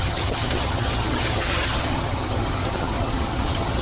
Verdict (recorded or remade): remade